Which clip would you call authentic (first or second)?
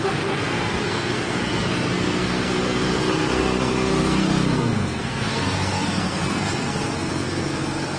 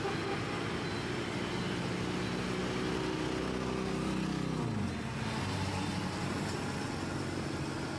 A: second